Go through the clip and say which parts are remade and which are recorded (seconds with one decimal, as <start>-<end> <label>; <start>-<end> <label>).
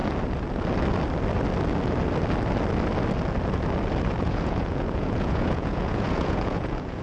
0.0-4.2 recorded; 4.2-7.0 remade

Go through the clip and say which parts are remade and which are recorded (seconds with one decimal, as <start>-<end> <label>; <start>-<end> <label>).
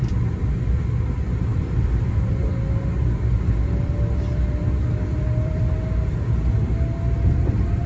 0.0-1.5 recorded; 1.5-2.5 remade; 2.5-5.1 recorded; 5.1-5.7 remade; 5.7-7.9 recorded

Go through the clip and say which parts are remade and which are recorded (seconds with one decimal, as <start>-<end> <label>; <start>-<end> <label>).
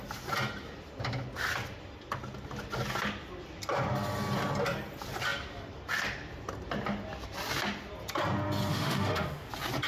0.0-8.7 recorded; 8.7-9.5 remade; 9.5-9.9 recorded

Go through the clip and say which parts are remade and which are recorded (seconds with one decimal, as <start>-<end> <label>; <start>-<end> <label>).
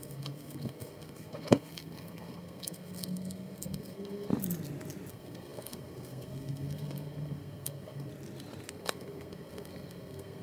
0.0-4.3 remade; 4.3-5.1 recorded; 5.1-8.1 remade; 8.1-8.7 recorded; 8.7-10.4 remade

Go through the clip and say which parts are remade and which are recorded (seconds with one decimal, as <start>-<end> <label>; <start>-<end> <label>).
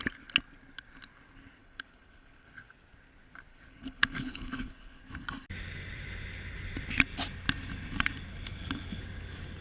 0.0-1.6 recorded; 1.6-2.5 remade; 2.5-3.5 recorded; 3.5-5.0 remade; 5.0-8.3 recorded; 8.3-9.0 remade; 9.0-9.6 recorded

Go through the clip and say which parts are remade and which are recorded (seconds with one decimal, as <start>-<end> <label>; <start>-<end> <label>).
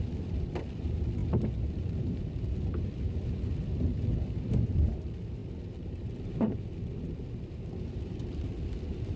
0.0-9.2 remade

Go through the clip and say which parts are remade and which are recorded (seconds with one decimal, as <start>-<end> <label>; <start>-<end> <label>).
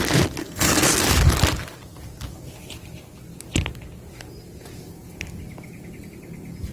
0.0-0.4 recorded; 0.4-1.0 remade; 1.0-6.7 recorded